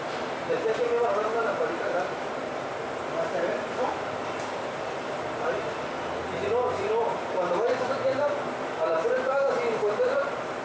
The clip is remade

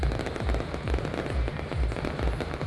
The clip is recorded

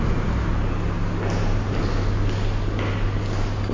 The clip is recorded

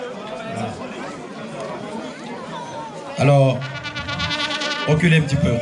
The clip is recorded